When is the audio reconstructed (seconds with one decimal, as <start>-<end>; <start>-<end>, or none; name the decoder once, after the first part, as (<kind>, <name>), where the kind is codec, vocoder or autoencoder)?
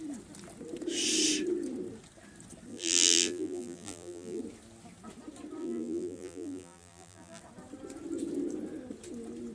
2.7-4.4 (vocoder, BigVGAN v2); 5.6-7.4